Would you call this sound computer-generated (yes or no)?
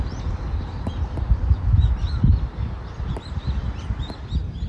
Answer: no